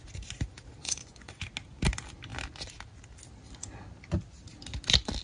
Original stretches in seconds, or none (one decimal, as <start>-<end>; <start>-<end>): 0.0-0.8; 1.4-5.2